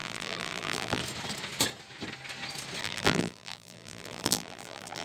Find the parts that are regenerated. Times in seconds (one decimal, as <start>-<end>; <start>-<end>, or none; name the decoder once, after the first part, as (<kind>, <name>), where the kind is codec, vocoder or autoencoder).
0.0-1.0 (vocoder, BigVGAN v2); 2.8-5.0